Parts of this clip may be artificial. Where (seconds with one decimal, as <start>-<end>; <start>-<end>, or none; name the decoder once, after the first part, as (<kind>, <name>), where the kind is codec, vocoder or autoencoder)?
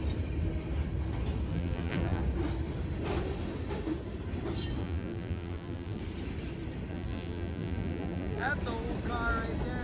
1.5-2.2 (vocoder, BigVGAN v2); 4.8-6.0; 6.9-8.5